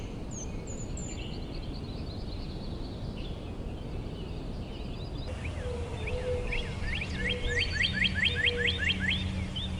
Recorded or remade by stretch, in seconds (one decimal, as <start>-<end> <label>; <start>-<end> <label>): 0.0-9.8 recorded